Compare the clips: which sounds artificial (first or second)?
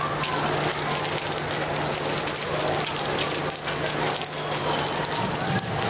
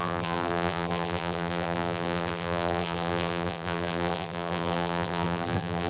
second